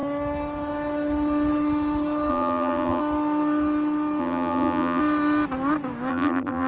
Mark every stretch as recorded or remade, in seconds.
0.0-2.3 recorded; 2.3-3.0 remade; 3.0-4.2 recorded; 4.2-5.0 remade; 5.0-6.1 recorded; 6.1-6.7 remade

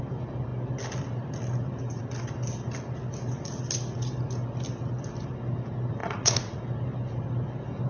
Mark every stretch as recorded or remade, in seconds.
0.0-6.0 recorded; 6.0-6.6 remade; 6.6-7.9 recorded

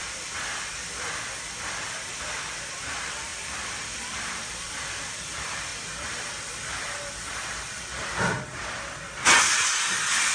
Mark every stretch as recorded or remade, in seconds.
0.0-0.8 remade; 0.8-2.1 recorded; 2.1-5.7 remade; 5.7-9.0 recorded; 9.0-10.3 remade